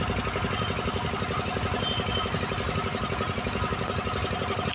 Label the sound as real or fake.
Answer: real